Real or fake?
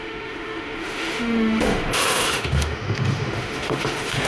fake